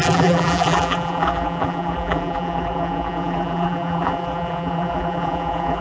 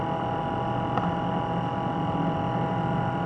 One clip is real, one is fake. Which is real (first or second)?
second